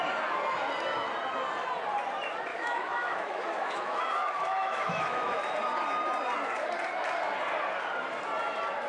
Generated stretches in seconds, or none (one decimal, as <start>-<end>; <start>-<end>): 2.5-5.4